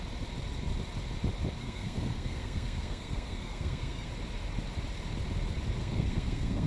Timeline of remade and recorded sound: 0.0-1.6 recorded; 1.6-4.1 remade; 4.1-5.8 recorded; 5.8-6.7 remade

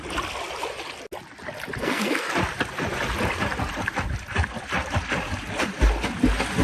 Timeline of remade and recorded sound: 0.0-1.8 recorded; 1.8-2.3 remade; 2.3-6.6 recorded

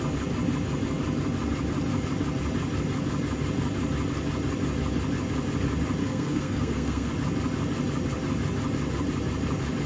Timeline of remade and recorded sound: 0.0-6.0 recorded; 6.0-7.1 remade; 7.1-9.9 recorded

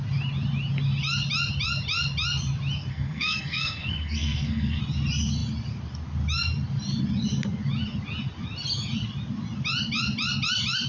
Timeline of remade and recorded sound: 0.0-2.9 recorded; 2.9-4.8 remade; 4.8-10.9 recorded

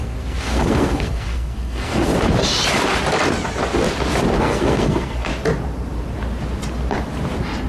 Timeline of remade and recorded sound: 0.0-2.1 remade; 2.1-4.4 recorded; 4.4-5.3 remade; 5.3-7.7 recorded

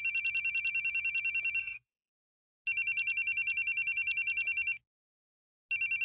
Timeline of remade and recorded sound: 0.0-1.6 recorded; 1.6-2.1 remade; 2.1-6.0 recorded